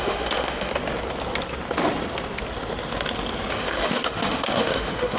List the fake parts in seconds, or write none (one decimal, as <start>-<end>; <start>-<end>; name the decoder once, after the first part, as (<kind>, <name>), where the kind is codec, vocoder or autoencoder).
0.0-0.7 (autoencoder, DAC-VAE); 3.5-5.2